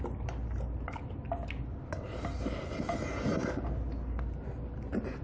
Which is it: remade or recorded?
recorded